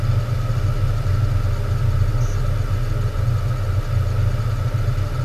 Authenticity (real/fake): real